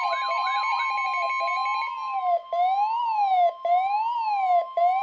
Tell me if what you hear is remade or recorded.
recorded